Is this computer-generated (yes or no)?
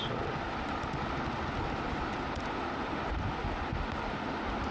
no